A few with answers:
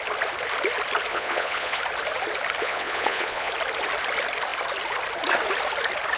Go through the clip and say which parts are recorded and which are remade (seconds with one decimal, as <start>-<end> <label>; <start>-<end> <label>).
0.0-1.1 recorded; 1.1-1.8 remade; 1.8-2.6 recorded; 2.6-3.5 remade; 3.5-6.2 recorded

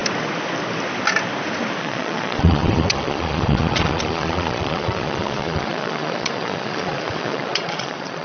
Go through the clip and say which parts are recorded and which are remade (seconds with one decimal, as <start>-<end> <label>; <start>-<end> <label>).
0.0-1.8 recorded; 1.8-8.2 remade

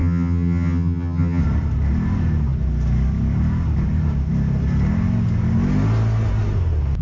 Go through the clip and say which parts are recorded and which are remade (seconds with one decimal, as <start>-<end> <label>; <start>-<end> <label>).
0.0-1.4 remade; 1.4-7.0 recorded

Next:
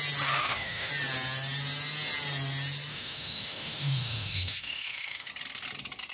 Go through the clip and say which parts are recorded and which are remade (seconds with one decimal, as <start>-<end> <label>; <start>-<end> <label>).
0.0-0.4 recorded; 0.4-0.9 remade; 0.9-2.9 recorded; 2.9-5.3 remade; 5.3-6.1 recorded

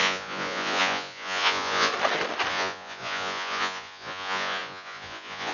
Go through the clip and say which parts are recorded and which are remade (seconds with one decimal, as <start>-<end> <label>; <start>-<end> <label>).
0.0-1.9 remade; 1.9-2.5 recorded; 2.5-5.5 remade

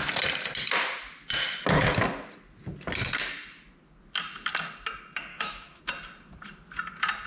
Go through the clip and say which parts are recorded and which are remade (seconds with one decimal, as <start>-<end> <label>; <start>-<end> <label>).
0.0-5.3 recorded; 5.3-5.8 remade; 5.8-7.3 recorded

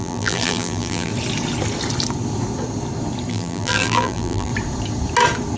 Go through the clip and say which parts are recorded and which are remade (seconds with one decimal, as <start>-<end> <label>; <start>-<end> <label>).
0.0-1.1 remade; 1.1-3.3 recorded; 3.3-4.5 remade; 4.5-5.6 recorded

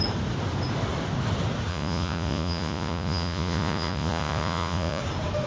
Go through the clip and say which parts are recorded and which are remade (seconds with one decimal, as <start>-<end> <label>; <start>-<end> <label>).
0.0-1.7 recorded; 1.7-5.0 remade; 5.0-5.5 recorded